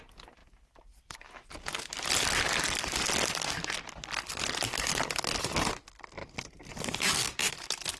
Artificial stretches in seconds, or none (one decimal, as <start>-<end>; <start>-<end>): none